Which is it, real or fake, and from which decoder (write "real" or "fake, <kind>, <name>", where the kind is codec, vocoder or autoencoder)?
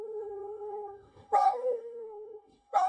fake, codec, SNAC